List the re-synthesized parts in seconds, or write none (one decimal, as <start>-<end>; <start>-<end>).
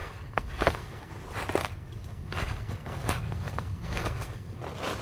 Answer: 0.0-1.1; 1.6-4.6